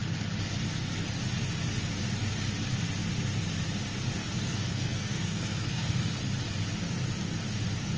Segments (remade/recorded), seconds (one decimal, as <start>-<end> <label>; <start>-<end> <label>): 0.0-4.2 recorded; 4.2-6.2 remade; 6.2-8.0 recorded